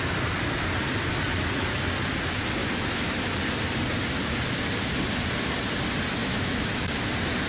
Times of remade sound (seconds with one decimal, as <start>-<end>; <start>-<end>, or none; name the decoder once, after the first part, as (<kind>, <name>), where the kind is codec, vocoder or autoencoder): 2.6-3.3 (autoencoder, DAC-VAE); 6.2-6.9